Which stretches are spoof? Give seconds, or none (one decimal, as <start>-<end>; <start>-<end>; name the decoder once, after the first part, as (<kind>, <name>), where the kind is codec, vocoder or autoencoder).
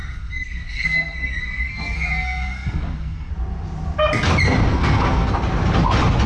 0.0-3.3 (codec, SNAC); 4.7-5.3